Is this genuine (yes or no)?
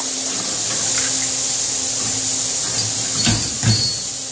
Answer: yes